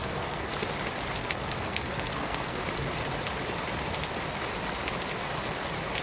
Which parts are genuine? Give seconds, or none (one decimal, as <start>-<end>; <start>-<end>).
0.5-1.2; 2.6-6.0